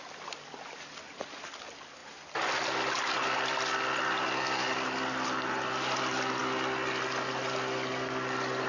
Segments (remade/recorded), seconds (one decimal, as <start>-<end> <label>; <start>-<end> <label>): 0.0-8.7 recorded